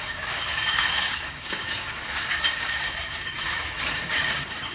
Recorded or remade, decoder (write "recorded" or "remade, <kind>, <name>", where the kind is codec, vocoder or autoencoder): remade, codec, DAC